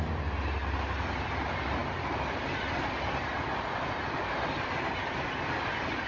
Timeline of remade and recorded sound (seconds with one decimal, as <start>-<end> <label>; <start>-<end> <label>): 0.0-6.1 recorded